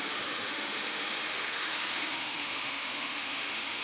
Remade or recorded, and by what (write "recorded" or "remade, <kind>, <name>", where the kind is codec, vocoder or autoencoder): remade, autoencoder, DAC-VAE